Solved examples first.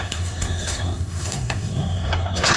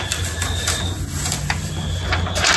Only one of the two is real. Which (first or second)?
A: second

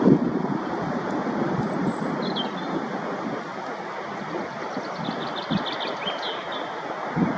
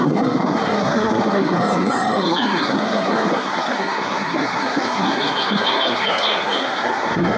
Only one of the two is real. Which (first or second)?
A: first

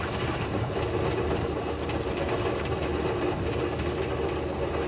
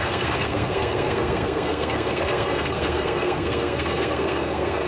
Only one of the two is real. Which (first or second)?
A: first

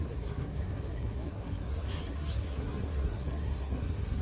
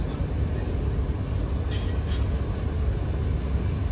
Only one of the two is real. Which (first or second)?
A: second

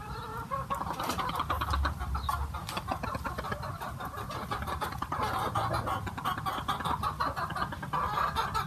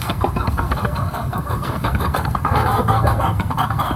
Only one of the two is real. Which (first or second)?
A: first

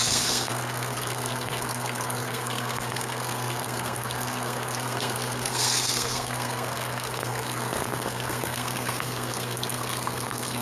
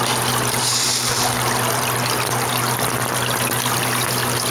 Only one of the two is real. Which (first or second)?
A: second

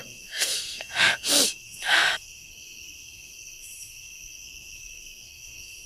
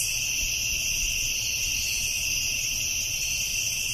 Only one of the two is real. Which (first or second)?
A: second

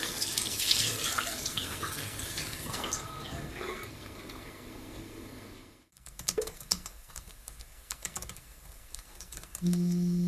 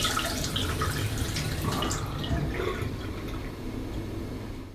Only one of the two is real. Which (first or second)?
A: second